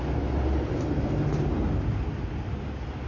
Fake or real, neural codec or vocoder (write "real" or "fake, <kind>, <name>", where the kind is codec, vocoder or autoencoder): real